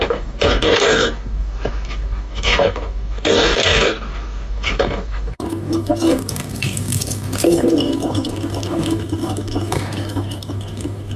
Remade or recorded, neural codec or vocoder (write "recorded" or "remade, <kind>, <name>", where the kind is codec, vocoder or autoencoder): remade, codec, DAC